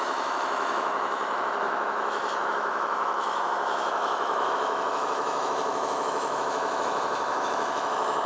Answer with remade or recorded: remade